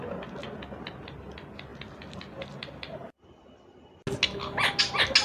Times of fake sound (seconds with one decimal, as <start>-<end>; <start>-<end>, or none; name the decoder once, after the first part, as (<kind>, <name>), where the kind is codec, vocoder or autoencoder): none